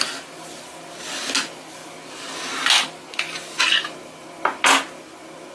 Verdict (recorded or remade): recorded